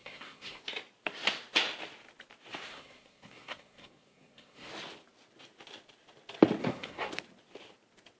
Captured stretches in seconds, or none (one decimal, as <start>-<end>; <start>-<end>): 0.6-2.7; 4.7-6.6; 7.1-8.2

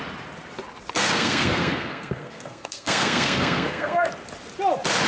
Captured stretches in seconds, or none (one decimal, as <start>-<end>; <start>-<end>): 0.0-1.0; 4.1-5.1

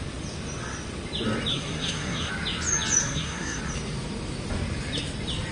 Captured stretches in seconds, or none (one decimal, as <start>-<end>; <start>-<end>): 0.0-1.5; 2.3-3.0; 3.6-5.5

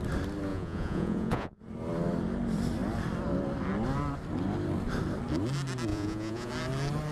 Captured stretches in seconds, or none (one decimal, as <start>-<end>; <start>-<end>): 0.0-0.5; 1.6-5.9; 6.5-7.1